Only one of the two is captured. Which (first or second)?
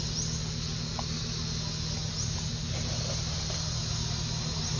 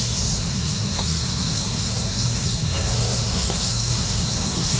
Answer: first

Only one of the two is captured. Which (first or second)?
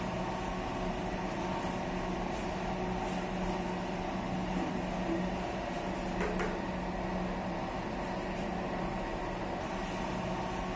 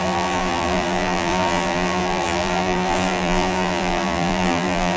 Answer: first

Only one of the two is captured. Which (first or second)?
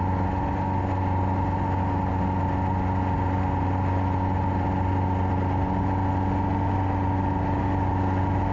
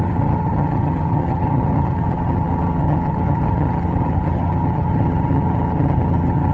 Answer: first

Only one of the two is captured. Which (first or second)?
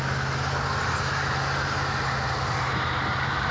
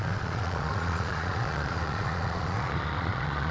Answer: first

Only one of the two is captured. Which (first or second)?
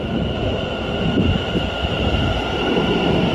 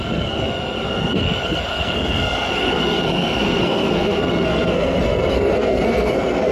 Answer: first